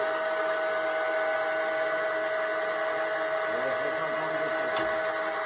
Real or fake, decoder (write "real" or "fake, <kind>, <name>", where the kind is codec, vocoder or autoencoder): real